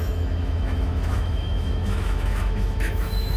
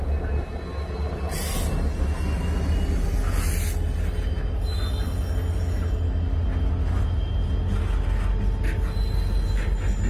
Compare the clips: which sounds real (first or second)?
second